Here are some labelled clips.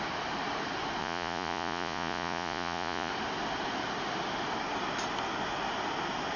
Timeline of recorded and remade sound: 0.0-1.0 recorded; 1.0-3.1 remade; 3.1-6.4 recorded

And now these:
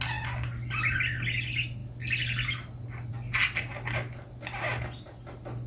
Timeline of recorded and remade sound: 0.0-5.7 recorded

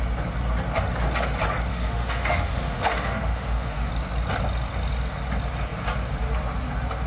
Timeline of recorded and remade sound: 0.0-1.7 recorded; 1.7-3.9 remade; 3.9-7.1 recorded

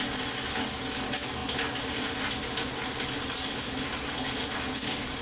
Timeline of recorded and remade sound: 0.0-5.2 recorded

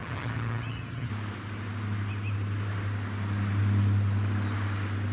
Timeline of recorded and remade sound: 0.0-1.1 remade; 1.1-5.1 recorded

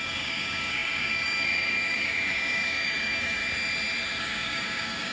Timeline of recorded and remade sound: 0.0-3.4 remade; 3.4-4.2 recorded; 4.2-5.1 remade

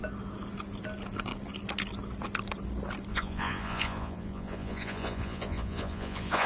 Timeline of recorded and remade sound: 0.0-3.1 recorded; 3.1-6.5 remade